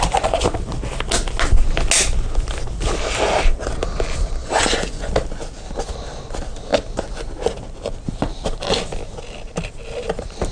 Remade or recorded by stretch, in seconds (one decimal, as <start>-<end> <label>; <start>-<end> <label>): 0.0-4.4 recorded; 4.4-5.1 remade; 5.1-10.5 recorded